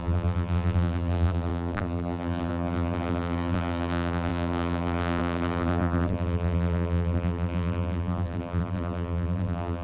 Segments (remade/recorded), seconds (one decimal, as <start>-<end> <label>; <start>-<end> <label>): 0.0-9.8 remade